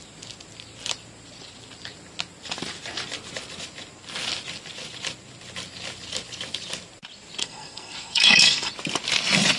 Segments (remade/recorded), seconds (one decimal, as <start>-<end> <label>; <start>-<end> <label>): 0.0-7.4 recorded; 7.4-8.7 remade; 8.7-9.6 recorded